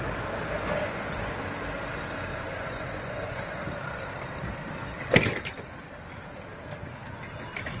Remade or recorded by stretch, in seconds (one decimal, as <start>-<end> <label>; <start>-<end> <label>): 0.0-0.8 recorded; 0.8-1.3 remade; 1.3-2.3 recorded; 2.3-3.6 remade; 3.6-7.8 recorded